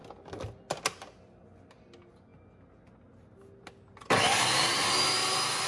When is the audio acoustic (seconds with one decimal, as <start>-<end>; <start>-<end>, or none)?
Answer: 0.0-5.7